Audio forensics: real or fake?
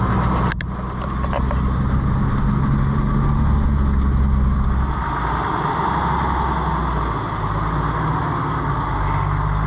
real